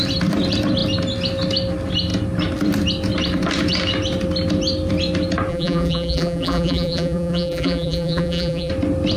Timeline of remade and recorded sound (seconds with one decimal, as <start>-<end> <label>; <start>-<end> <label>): 0.0-5.5 recorded; 5.5-8.7 remade; 8.7-9.2 recorded